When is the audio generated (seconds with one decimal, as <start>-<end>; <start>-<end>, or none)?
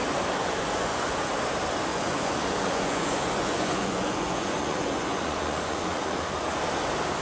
0.4-1.3; 1.9-6.2